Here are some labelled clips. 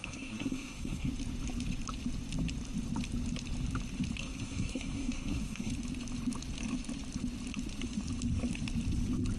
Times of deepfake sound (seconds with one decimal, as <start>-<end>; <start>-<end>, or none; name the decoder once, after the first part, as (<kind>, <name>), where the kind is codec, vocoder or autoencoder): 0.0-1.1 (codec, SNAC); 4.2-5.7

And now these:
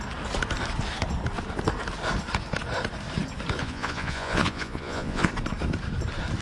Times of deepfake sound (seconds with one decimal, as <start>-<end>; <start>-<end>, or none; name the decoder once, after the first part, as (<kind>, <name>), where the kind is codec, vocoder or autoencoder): 3.6-5.3 (vocoder, Vocos)

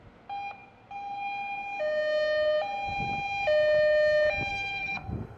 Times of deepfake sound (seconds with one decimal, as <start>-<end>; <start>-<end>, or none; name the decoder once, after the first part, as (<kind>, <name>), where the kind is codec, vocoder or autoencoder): 4.5-5.4 (autoencoder, DAC-VAE)

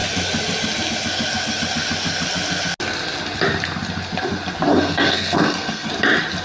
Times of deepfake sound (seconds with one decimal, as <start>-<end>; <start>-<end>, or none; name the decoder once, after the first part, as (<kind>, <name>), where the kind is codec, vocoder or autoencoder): 4.7-5.9 (codec, SNAC)

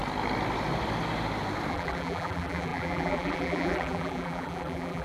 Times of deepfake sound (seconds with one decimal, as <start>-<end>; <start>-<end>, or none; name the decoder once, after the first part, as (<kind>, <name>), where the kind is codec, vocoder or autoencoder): 1.7-5.0 (vocoder, BigVGAN v2)

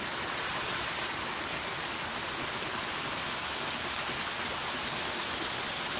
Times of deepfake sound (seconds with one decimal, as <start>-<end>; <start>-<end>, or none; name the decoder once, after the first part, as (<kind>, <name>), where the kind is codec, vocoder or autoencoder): 0.0-2.1 (vocoder, BigVGAN v2); 5.1-6.0